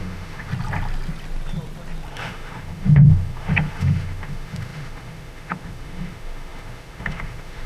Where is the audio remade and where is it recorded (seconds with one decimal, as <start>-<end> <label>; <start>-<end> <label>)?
0.0-0.5 remade; 0.5-2.1 recorded; 2.1-7.7 remade